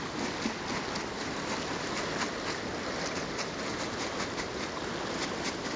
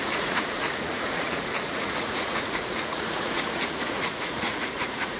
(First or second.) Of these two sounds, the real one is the first